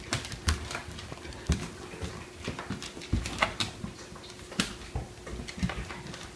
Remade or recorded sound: recorded